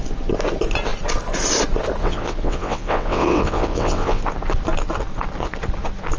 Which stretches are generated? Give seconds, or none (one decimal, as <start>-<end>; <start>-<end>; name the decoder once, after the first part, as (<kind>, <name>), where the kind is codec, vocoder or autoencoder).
2.0-4.2 (vocoder, WaveNeXt)